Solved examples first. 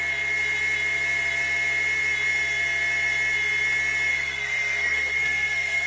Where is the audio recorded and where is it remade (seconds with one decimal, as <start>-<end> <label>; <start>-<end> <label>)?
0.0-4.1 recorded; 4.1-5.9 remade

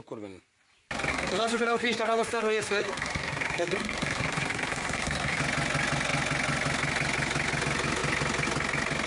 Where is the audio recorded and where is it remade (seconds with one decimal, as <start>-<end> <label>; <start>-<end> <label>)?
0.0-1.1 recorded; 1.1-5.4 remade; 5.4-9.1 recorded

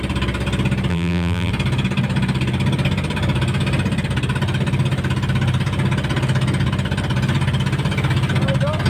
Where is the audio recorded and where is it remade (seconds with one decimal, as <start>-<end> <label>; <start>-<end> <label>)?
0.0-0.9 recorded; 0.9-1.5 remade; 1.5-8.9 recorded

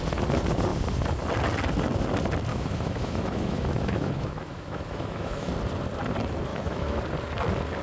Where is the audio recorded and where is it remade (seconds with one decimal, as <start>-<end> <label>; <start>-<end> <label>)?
0.0-2.5 recorded; 2.5-5.5 remade; 5.5-6.5 recorded; 6.5-7.0 remade; 7.0-7.8 recorded

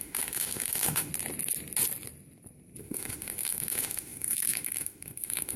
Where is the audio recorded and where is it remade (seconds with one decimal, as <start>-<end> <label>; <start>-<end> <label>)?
0.0-1.1 remade; 1.1-2.8 recorded; 2.8-5.6 remade

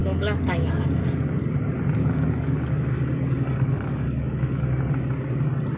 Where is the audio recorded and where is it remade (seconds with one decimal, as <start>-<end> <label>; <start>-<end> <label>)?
0.0-1.0 remade; 1.0-2.0 recorded; 2.0-4.9 remade; 4.9-5.8 recorded

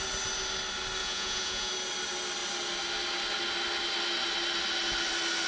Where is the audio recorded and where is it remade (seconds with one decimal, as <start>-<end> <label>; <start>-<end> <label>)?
0.0-1.0 recorded; 1.0-1.7 remade; 1.7-5.5 recorded

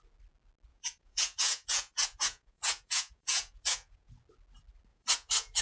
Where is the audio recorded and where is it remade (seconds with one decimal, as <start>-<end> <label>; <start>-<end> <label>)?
0.0-0.7 recorded; 0.7-4.1 remade; 4.1-4.9 recorded; 4.9-5.6 remade